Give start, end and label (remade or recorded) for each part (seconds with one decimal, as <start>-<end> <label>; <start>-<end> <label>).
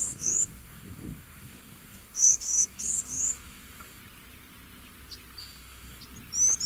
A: 0.0-4.0 remade; 4.0-5.4 recorded; 5.4-6.0 remade; 6.0-6.7 recorded